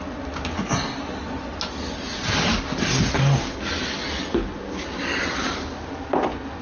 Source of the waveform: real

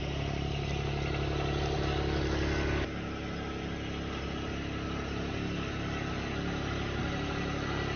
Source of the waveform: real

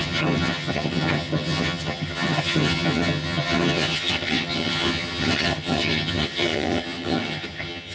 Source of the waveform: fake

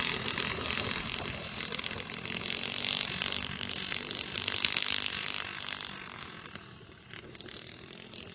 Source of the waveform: real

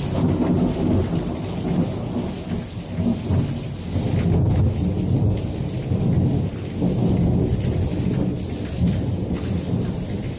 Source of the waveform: real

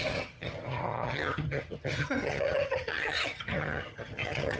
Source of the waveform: fake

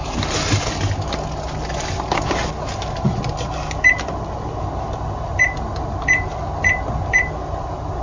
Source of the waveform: real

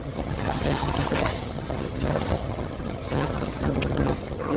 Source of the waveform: fake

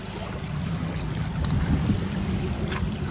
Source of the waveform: real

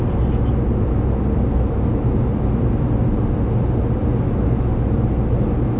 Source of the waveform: real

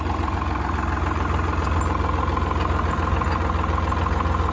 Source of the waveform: real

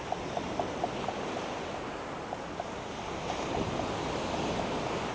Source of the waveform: real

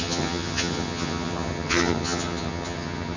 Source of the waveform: fake